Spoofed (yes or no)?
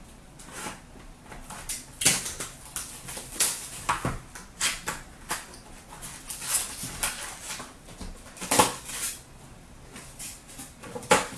no